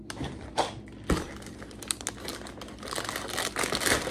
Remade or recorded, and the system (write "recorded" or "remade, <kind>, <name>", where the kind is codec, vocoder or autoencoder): recorded